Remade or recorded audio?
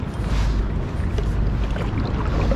recorded